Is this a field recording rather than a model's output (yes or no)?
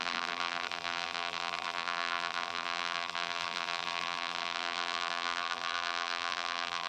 no